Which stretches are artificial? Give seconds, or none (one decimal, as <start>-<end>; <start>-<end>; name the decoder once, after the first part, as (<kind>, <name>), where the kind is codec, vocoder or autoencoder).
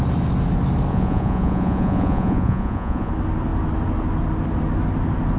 0.9-3.1 (vocoder, Vocos)